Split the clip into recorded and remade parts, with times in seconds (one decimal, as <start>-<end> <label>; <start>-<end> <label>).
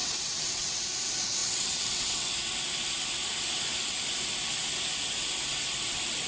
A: 0.0-0.8 remade; 0.8-1.4 recorded; 1.4-2.3 remade; 2.3-6.3 recorded